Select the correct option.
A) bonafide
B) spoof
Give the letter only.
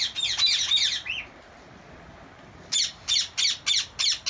A